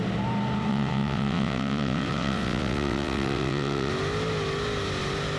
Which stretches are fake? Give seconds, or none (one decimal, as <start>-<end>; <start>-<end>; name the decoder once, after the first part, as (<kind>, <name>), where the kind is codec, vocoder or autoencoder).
0.7-3.9 (vocoder, WaveNeXt)